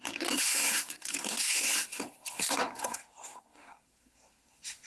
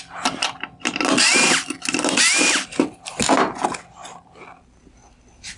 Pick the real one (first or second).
second